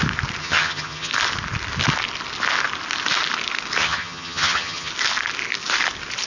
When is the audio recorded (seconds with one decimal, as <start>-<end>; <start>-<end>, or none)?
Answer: 0.0-0.4; 1.1-3.8; 4.9-6.3

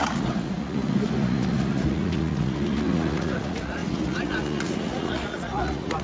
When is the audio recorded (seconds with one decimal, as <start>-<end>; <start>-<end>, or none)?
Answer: none